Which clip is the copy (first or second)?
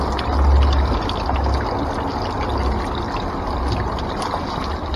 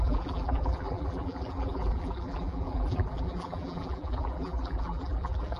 second